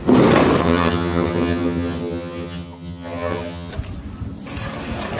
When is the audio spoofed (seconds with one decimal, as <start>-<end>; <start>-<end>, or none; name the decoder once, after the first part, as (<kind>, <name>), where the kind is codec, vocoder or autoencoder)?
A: 0.6-3.7 (vocoder, HiFi-GAN)